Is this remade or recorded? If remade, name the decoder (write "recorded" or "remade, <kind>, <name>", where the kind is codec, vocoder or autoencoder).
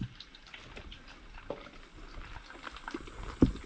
recorded